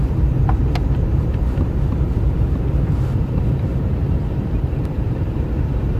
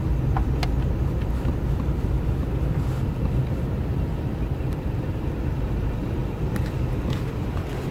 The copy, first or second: first